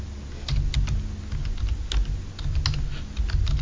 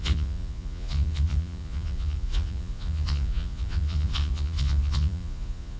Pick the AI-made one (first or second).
second